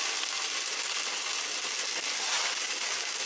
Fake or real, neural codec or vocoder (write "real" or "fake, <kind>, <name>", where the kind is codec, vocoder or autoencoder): real